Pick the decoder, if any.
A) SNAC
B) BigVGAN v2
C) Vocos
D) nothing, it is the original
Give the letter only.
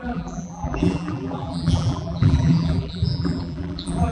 B